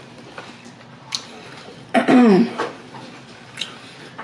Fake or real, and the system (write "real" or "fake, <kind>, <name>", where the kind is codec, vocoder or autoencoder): real